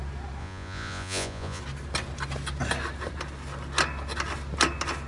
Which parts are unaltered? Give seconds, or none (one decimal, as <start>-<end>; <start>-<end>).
0.0-0.4; 1.6-5.1